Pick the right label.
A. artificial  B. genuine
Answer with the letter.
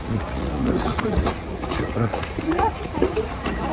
A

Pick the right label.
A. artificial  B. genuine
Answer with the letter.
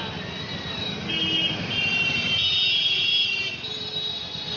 B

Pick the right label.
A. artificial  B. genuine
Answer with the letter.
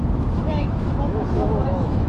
A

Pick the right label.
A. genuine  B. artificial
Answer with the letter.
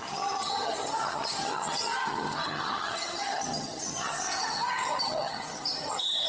B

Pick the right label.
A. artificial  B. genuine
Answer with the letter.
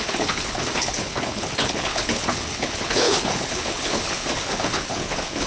A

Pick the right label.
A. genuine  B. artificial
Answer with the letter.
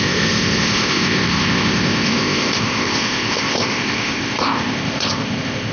B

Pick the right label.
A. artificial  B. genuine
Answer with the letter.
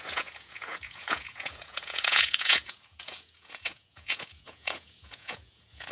A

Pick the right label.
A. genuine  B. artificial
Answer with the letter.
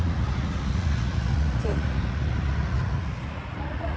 B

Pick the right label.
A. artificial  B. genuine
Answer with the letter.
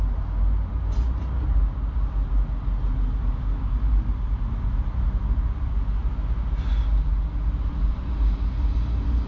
B